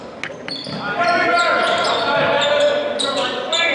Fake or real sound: real